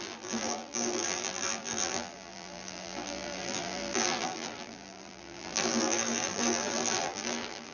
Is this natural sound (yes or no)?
no